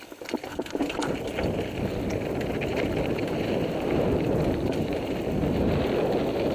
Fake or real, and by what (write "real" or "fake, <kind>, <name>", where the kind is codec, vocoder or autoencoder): real